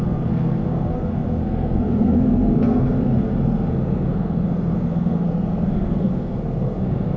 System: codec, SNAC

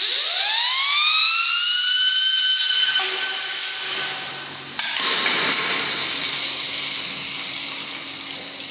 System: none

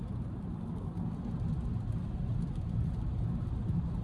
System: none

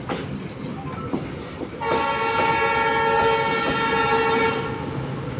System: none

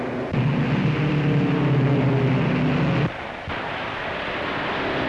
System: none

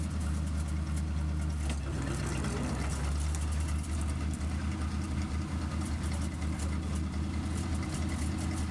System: none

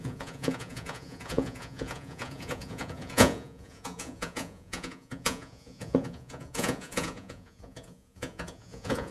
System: vocoder, Vocos